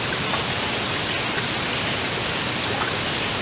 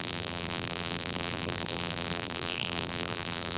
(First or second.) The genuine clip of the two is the first